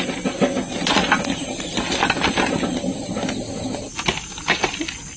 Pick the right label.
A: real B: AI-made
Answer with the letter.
A